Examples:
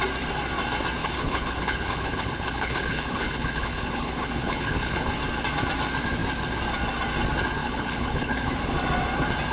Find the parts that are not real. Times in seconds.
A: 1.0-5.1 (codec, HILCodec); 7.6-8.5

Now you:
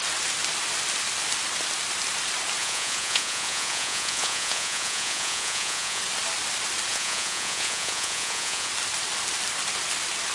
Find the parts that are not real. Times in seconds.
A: 2.6-6.0 (vocoder, Vocos); 6.9-8.7

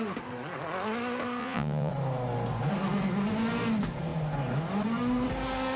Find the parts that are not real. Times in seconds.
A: 1.4-1.9 (vocoder, Vocos)

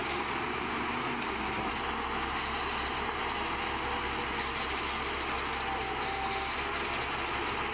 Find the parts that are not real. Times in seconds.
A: none

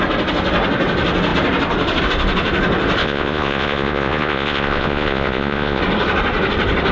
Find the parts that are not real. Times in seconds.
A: 3.0-5.8 (vocoder, Vocos)

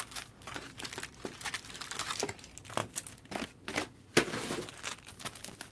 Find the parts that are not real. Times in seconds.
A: none